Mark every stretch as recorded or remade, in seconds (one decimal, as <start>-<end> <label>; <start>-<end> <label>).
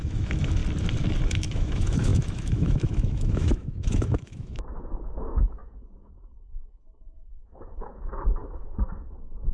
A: 0.0-0.6 remade; 0.6-1.3 recorded; 1.3-9.5 remade